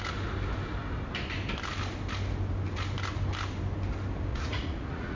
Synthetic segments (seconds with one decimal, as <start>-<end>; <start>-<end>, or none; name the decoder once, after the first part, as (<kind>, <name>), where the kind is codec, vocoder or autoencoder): 4.3-5.2 (vocoder, Vocos)